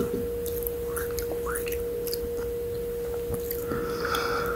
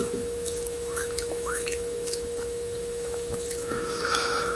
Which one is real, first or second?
first